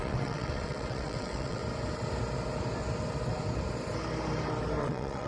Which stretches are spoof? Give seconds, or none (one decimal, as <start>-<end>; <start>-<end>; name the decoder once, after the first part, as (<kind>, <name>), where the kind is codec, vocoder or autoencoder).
0.0-1.6 (vocoder, WaveNeXt); 4.8-5.3